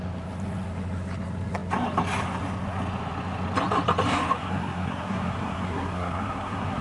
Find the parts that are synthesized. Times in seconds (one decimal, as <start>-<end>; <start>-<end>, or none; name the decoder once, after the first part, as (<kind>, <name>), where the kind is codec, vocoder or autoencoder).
4.4-6.8 (codec, SNAC)